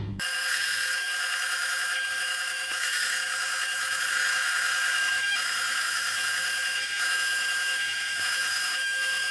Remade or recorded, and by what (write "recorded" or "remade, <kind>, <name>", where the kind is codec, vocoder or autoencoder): remade, autoencoder, DAC-VAE